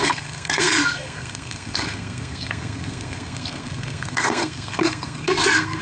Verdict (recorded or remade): remade